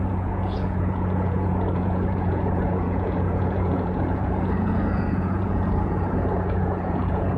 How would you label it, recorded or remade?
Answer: remade